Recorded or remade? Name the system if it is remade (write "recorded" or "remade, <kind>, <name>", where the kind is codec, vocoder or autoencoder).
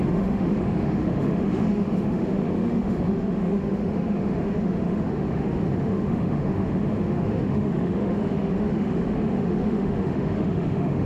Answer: remade, autoencoder, DAC-VAE